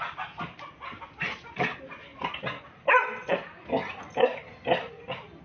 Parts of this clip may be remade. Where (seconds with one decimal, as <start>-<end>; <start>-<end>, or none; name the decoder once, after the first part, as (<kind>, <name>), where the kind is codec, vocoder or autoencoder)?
none